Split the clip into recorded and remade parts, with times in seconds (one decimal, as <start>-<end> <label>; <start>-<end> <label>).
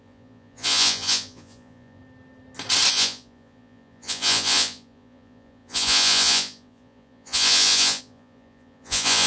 0.0-2.0 remade; 2.0-2.9 recorded; 2.9-9.3 remade